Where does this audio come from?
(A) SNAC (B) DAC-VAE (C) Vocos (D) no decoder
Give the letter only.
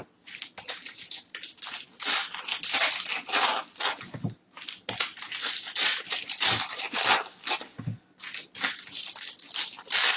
D